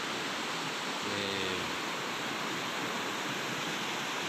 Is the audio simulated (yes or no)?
no